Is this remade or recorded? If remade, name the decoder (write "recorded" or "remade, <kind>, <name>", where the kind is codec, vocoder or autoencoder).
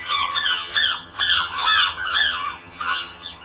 remade, vocoder, HiFi-GAN